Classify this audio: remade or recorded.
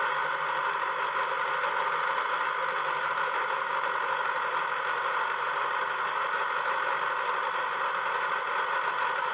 recorded